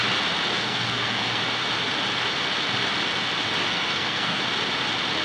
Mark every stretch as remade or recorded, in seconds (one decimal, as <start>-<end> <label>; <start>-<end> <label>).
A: 0.0-0.5 recorded; 0.5-1.4 remade; 1.4-3.6 recorded; 3.6-4.4 remade; 4.4-5.2 recorded